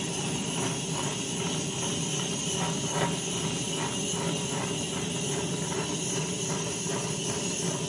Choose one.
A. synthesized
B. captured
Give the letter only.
B